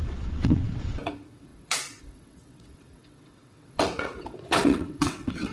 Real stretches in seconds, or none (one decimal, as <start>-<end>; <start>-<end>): none